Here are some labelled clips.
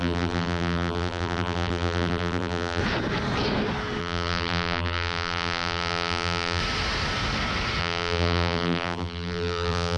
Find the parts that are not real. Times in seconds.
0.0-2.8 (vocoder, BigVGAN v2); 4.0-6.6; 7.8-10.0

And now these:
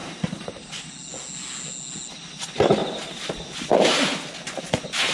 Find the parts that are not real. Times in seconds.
0.0-0.9 (vocoder, BigVGAN v2)

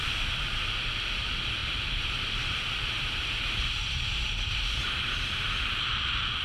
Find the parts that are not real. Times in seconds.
0.0-0.6 (vocoder, BigVGAN v2); 1.6-5.4

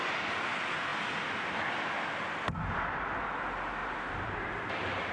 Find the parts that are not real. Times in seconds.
3.8-4.5 (vocoder, BigVGAN v2)

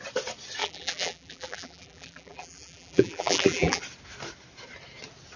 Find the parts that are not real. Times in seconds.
0.6-3.8 (vocoder, BigVGAN v2)

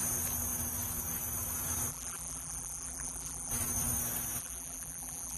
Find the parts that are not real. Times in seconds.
1.9-3.5 (vocoder, BigVGAN v2); 4.4-5.4

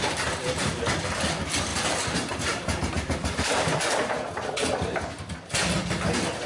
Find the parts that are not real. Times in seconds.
1.7-5.3 (vocoder, BigVGAN v2)

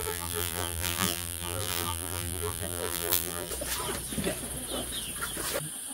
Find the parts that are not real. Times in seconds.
0.0-3.5 (vocoder, BigVGAN v2)